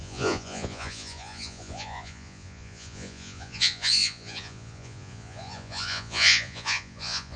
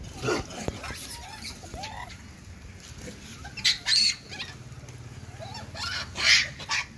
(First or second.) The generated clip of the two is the first